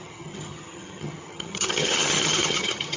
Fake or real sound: fake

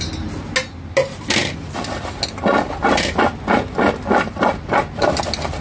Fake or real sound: real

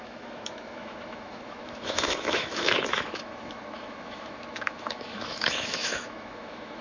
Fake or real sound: fake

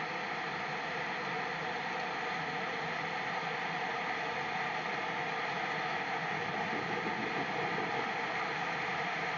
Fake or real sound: real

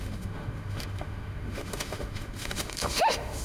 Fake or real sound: fake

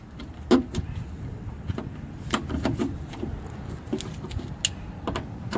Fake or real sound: real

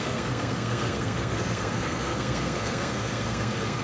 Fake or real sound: fake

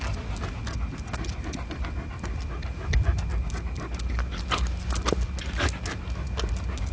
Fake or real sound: real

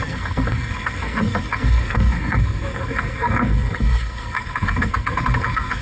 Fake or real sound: fake